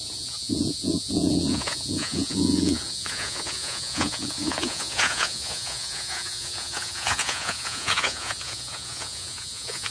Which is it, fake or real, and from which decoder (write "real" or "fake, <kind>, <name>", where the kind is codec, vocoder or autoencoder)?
fake, vocoder, Vocos